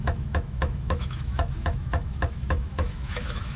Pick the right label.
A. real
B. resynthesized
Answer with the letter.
B